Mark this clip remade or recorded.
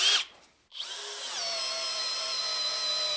recorded